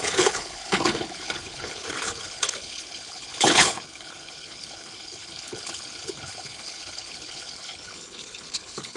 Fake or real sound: fake